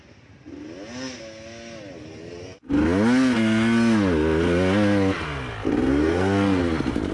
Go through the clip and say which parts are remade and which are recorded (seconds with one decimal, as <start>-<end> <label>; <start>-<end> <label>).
0.0-5.9 recorded; 5.9-6.6 remade; 6.6-7.1 recorded